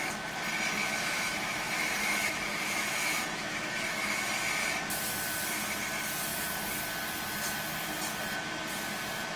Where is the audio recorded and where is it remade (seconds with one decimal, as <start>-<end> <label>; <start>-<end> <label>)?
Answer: 0.0-0.8 recorded; 0.8-4.2 remade; 4.2-9.4 recorded